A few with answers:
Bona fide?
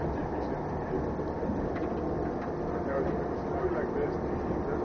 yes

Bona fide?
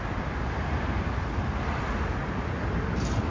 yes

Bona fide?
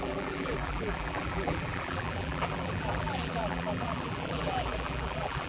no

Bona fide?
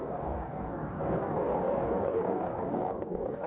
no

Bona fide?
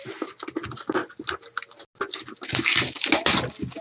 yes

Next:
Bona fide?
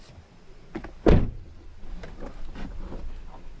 yes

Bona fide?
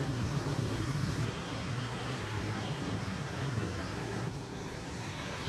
no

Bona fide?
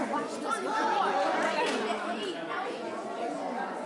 no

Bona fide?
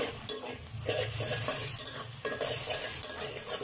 yes